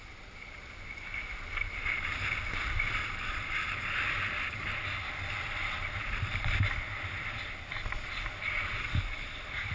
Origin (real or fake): real